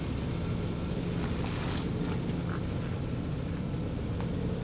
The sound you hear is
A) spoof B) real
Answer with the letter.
B